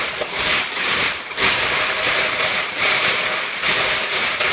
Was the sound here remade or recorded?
remade